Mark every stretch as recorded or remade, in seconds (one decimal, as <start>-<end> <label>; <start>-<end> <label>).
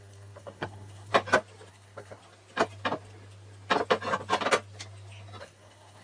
0.0-1.1 remade; 1.1-1.7 recorded; 1.7-2.2 remade; 2.2-5.4 recorded; 5.4-6.0 remade